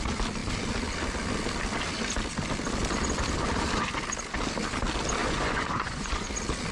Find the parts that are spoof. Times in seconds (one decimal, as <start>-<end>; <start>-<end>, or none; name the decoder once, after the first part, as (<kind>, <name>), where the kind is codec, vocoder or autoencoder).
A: 5.2-6.3 (vocoder, Vocos)